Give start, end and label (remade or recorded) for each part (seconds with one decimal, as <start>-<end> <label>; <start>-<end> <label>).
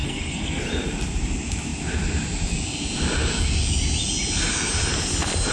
0.0-0.6 remade; 0.6-5.5 recorded